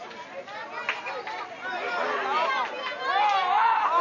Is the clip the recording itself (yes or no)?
yes